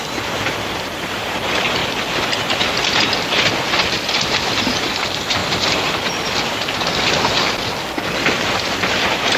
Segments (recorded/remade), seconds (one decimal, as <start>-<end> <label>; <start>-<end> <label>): 0.0-1.8 remade; 1.8-4.1 recorded; 4.1-5.4 remade; 5.4-9.0 recorded; 9.0-9.4 remade